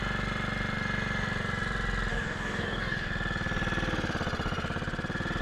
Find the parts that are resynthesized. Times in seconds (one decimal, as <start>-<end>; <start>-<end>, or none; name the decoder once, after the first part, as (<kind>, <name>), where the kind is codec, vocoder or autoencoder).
2.1-3.1 (codec, DAC)